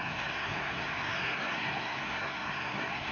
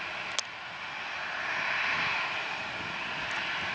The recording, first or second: second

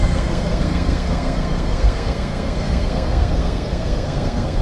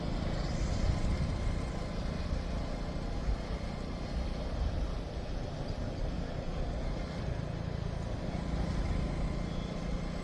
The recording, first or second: second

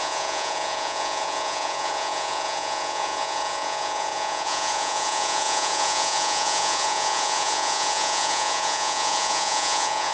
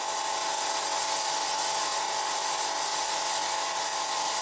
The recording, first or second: second